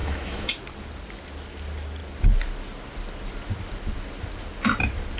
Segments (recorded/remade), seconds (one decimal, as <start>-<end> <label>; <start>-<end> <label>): 0.0-0.5 remade; 0.5-5.2 recorded